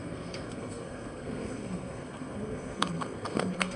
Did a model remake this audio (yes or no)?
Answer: yes